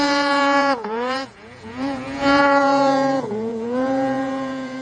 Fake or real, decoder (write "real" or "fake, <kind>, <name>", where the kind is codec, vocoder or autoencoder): fake, vocoder, Vocos